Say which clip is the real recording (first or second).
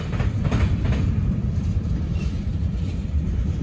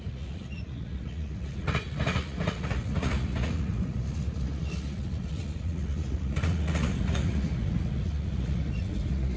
first